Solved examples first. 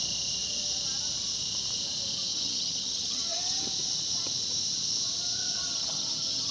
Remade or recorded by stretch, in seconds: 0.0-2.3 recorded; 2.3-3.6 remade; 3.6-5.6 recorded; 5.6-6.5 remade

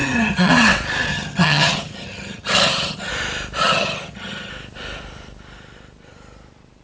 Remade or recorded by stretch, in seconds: 0.0-0.5 remade; 0.5-1.1 recorded; 1.1-3.1 remade; 3.1-3.6 recorded; 3.6-4.5 remade; 4.5-6.8 recorded

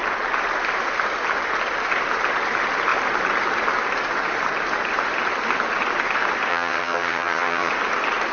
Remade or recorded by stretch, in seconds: 0.0-6.5 recorded; 6.5-7.7 remade; 7.7-8.3 recorded